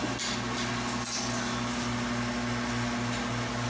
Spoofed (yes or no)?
no